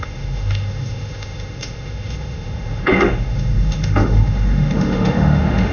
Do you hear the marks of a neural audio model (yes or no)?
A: yes